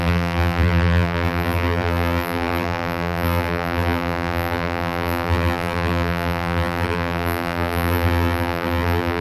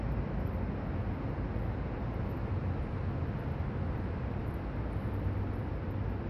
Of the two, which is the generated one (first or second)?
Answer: first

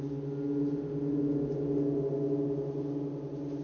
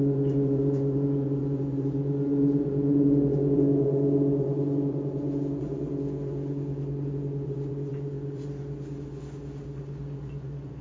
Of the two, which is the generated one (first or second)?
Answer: second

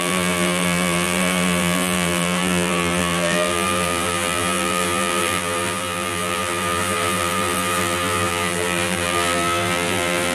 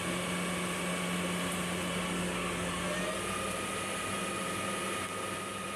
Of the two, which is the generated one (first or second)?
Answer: first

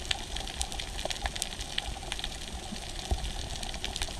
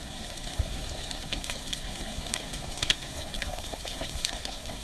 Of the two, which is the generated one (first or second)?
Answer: second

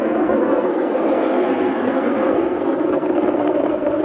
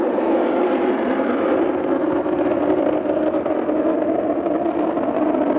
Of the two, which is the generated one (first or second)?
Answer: first